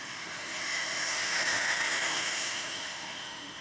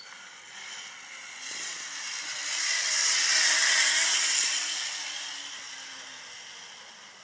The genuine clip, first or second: second